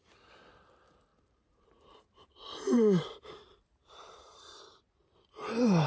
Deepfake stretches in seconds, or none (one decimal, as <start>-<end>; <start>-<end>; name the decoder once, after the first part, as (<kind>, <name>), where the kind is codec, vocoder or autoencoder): 1.1-4.6 (vocoder, BigVGAN v2)